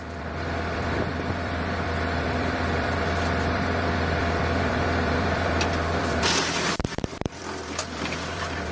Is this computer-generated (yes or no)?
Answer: yes